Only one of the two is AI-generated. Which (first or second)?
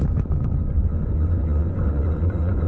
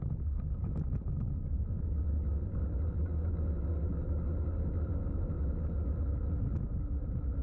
first